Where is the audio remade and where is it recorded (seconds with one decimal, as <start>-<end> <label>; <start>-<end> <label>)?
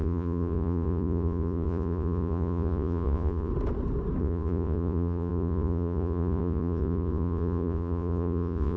0.0-3.5 remade; 3.5-4.2 recorded; 4.2-8.8 remade